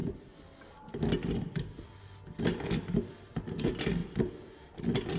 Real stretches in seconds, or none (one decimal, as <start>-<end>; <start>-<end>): 0.0-5.2